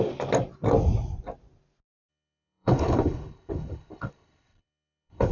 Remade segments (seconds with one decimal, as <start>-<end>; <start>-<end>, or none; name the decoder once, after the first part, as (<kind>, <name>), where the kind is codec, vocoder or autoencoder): 2.1-5.3 (codec, HILCodec)